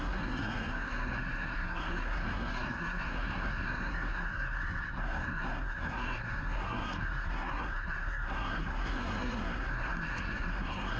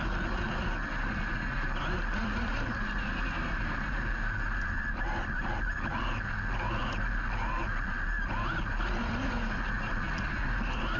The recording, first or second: second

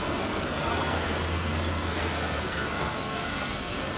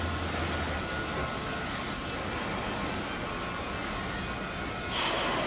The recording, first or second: second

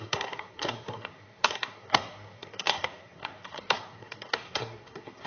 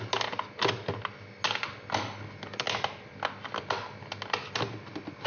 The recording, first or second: second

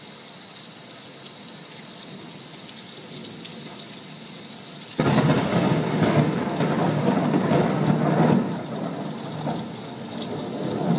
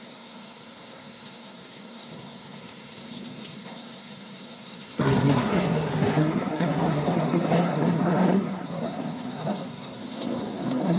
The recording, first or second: first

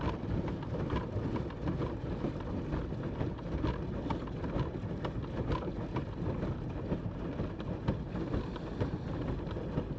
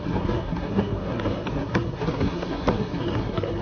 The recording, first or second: first